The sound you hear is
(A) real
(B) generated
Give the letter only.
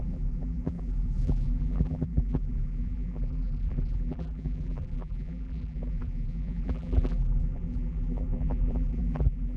B